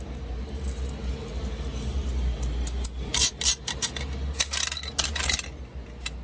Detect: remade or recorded recorded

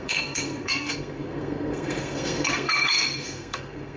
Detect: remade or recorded remade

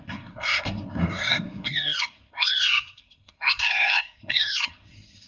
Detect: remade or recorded remade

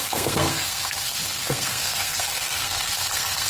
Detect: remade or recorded remade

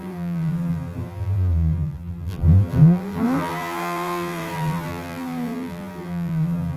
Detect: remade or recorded remade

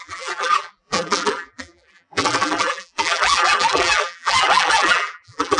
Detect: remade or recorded remade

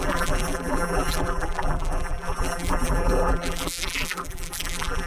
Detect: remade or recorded remade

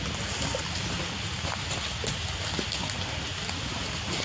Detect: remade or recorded recorded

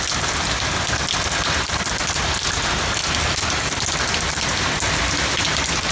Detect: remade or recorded recorded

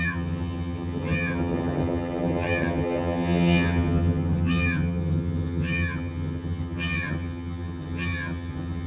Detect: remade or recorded remade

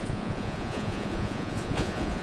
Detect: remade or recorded remade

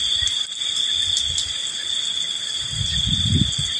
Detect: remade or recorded recorded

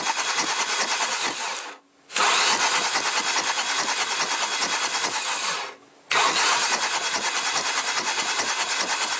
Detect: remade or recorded recorded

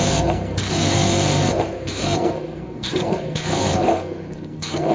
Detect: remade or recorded remade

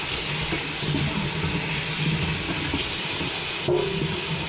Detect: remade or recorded recorded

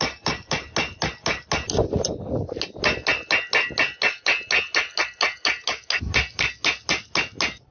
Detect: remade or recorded recorded